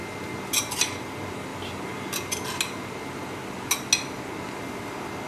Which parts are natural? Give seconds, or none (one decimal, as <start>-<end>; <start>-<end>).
0.0-5.3

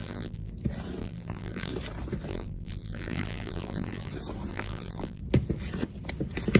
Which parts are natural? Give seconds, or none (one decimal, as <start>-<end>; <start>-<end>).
0.5-1.0; 1.7-2.3; 4.1-4.5; 5.2-6.6

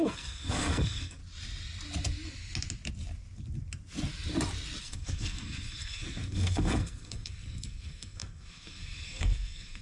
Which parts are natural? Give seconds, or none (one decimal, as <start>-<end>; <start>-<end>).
1.2-4.8